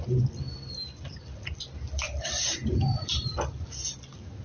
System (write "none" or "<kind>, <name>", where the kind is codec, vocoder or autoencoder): vocoder, BigVGAN v2